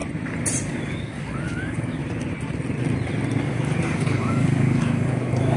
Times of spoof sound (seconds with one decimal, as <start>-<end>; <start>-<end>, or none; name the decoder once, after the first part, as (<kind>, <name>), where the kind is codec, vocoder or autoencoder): 0.7-2.0 (codec, DAC); 3.4-5.6